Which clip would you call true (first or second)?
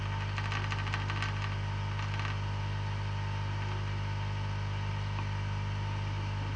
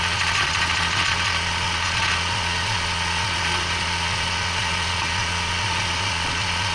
first